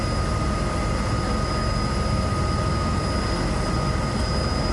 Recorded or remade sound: recorded